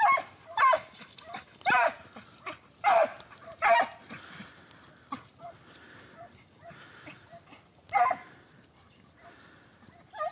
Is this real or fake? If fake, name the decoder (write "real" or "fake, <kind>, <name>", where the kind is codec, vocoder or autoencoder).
real